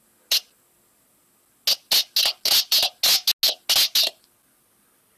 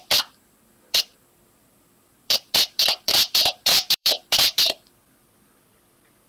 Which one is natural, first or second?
first